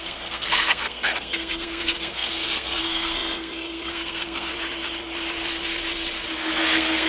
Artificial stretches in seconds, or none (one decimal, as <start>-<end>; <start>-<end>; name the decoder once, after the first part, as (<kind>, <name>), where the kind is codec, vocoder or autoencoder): 0.0-4.5 (codec, SNAC); 6.6-7.1